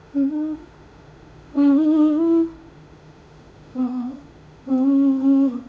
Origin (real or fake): fake